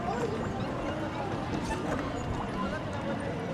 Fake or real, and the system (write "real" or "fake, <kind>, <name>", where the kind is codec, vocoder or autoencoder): real